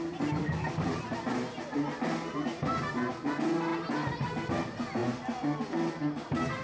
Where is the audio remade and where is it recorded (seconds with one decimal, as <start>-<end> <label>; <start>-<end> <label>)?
0.0-0.4 recorded; 0.4-0.9 remade; 0.9-6.6 recorded